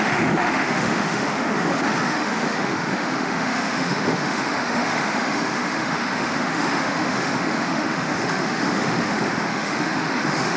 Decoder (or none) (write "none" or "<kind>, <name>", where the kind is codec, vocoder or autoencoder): autoencoder, DAC-VAE